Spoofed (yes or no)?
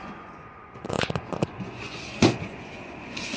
yes